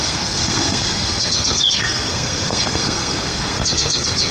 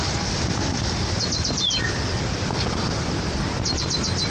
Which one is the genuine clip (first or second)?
second